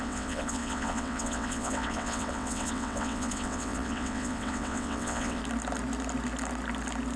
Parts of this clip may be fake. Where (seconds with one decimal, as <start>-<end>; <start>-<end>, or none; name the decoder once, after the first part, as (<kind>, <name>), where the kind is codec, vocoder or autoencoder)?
0.0-5.4 (vocoder, WaveNeXt)